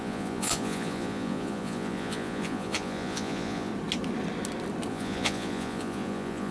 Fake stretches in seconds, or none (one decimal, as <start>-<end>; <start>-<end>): 0.0-3.7; 4.9-6.5